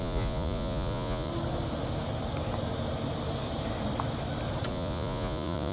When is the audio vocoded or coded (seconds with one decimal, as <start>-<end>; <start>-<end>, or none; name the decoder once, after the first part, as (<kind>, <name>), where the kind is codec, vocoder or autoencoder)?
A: 0.0-1.3 (vocoder, Vocos); 4.7-5.7